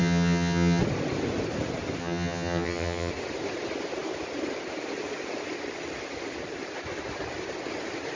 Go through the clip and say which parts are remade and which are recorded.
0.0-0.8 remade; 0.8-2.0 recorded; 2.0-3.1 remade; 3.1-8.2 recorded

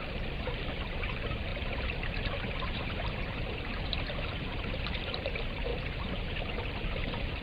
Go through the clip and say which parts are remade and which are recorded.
0.0-7.4 remade

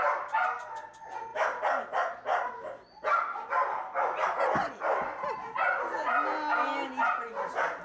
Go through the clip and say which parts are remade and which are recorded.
0.0-1.3 recorded; 1.3-2.5 remade; 2.5-7.8 recorded

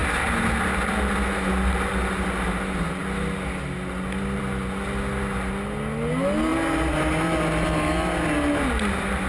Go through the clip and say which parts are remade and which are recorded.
0.0-9.3 recorded